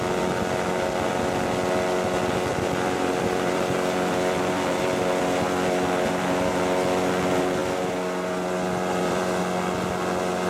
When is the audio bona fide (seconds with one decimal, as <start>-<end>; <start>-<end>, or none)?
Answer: 0.0-2.5; 6.6-7.6; 9.4-10.5